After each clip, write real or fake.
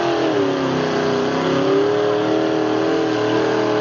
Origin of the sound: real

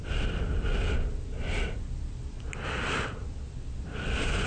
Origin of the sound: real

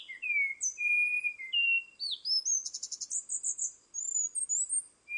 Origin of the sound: real